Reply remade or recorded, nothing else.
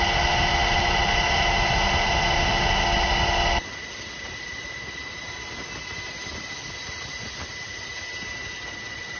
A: recorded